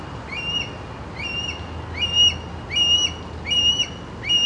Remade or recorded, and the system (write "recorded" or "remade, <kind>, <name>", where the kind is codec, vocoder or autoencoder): recorded